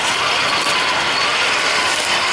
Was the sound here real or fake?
real